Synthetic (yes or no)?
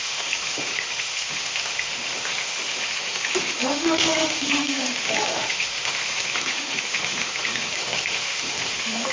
yes